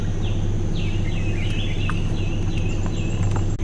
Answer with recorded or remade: recorded